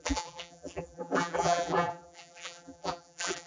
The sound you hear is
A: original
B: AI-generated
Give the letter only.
B